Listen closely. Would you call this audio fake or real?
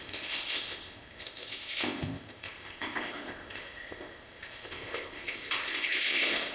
fake